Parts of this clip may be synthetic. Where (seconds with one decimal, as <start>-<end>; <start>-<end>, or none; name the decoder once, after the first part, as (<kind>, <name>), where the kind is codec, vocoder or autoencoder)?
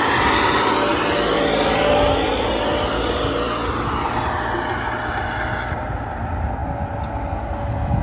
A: none